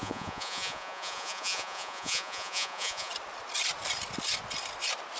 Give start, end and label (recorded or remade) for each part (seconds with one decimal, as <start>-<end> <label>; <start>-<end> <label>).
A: 0.0-3.1 remade; 3.1-5.2 recorded